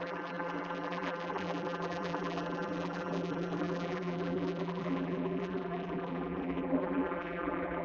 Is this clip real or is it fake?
fake